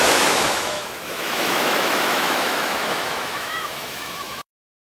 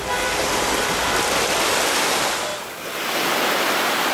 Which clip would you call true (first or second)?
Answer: second